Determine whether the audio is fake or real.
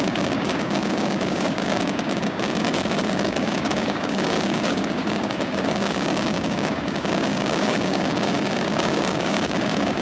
fake